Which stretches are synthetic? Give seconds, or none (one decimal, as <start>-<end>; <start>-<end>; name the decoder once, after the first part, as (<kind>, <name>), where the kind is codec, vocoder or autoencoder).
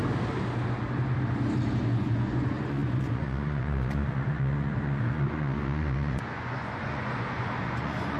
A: 1.8-8.2 (vocoder, Vocos)